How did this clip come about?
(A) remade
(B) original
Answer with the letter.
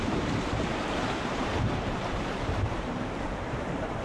A